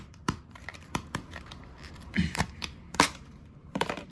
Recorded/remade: remade